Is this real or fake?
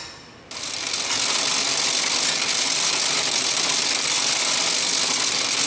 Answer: real